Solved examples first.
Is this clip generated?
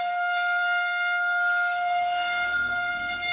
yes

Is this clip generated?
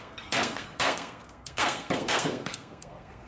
yes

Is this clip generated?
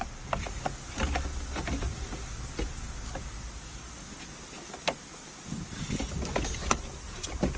no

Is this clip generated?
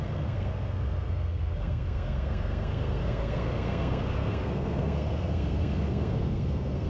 yes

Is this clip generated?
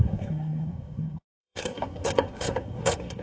yes